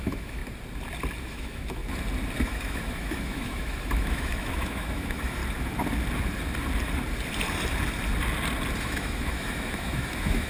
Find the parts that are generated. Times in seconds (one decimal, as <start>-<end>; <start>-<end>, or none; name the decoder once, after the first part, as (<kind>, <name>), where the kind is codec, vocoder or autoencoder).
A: 0.0-0.4 (autoencoder, DAC-VAE); 1.2-1.8; 2.4-5.4; 8.8-10.5